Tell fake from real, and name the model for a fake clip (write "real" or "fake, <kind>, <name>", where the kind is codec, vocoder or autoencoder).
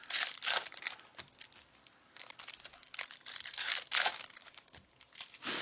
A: real